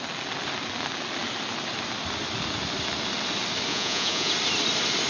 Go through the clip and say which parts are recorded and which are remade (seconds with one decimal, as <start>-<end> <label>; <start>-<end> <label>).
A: 0.0-3.7 recorded; 3.7-4.3 remade; 4.3-5.1 recorded